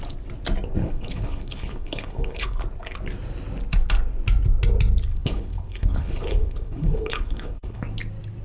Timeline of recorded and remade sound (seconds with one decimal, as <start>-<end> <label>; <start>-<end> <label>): 0.0-0.8 recorded; 0.8-2.6 remade; 2.6-5.1 recorded; 5.1-7.8 remade; 7.8-8.4 recorded